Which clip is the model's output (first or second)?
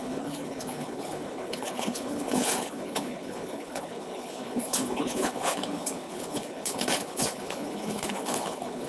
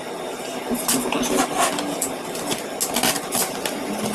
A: first